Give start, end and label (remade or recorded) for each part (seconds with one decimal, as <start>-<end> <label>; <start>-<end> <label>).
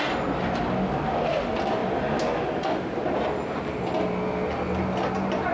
0.0-5.5 recorded